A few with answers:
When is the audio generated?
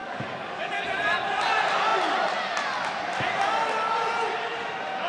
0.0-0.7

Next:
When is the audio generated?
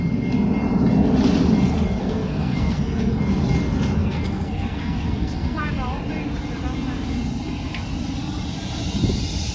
2.0-3.2; 4.0-5.6